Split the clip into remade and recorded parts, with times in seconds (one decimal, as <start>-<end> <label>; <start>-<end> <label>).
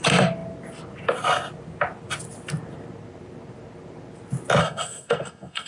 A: 0.0-4.6 recorded; 4.6-5.7 remade